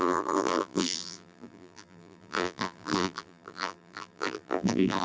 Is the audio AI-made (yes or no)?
yes